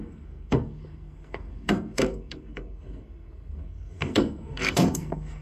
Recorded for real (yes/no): no